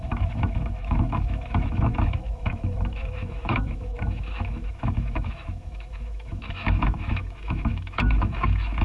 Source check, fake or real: fake